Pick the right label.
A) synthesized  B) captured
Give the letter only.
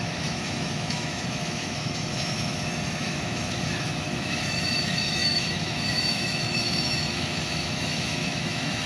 A